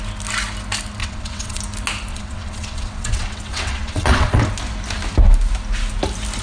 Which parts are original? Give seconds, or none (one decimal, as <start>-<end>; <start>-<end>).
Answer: 0.0-1.0; 1.6-2.1; 4.4-6.4